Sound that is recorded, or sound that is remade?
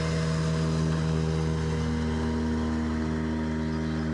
recorded